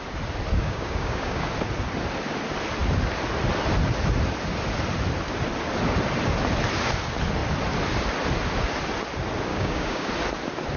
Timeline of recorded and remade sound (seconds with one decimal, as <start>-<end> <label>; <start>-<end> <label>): 0.0-0.6 recorded; 0.6-1.5 remade; 1.5-9.5 recorded; 9.5-10.1 remade; 10.1-10.8 recorded